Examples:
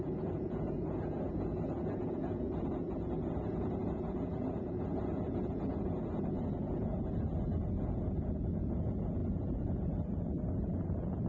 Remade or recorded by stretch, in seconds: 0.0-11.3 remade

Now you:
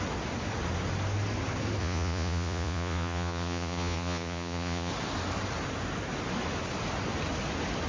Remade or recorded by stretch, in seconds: 0.0-1.8 recorded; 1.8-4.9 remade; 4.9-7.9 recorded

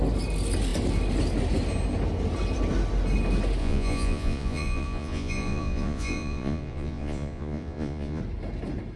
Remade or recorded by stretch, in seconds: 0.0-3.6 recorded; 3.6-8.2 remade; 8.2-9.0 recorded

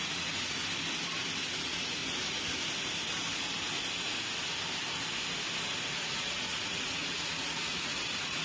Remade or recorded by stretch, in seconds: 0.0-0.6 remade; 0.6-1.6 recorded; 1.6-2.0 remade; 2.0-5.9 recorded; 5.9-8.4 remade

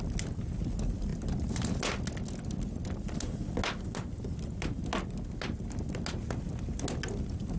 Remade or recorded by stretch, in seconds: 0.0-7.6 recorded

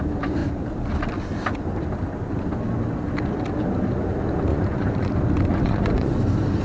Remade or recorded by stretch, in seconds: 0.0-4.5 recorded; 4.5-5.1 remade; 5.1-5.5 recorded; 5.5-6.1 remade; 6.1-6.6 recorded

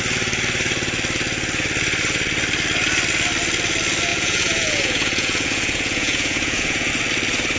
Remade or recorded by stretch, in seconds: 0.0-4.1 recorded; 4.1-6.9 remade; 6.9-7.6 recorded

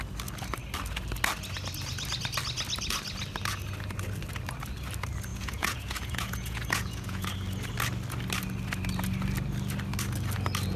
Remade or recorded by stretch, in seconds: 0.0-5.3 recorded; 5.3-7.3 remade; 7.3-10.8 recorded